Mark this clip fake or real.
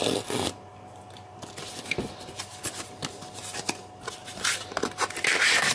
real